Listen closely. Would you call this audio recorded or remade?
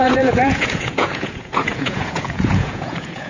remade